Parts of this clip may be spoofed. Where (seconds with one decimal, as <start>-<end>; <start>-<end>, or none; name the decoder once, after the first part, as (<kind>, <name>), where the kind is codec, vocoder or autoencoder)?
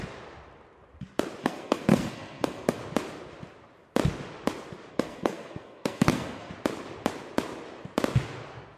1.4-2.8 (codec, SNAC); 4.9-6.5